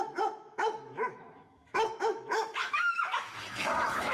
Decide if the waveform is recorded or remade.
remade